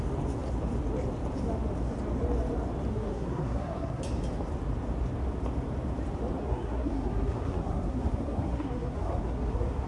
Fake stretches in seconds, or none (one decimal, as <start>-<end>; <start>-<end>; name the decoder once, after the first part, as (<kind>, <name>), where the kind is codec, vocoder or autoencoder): 2.9-4.0 (codec, SNAC); 6.4-9.9